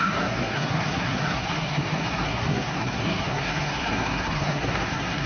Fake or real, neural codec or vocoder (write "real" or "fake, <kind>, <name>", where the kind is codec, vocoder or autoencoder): fake, codec, SNAC